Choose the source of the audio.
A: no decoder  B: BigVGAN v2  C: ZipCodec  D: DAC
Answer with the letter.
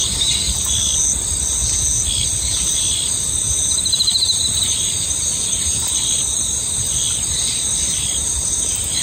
A